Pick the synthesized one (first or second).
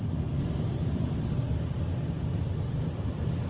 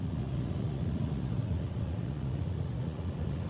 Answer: second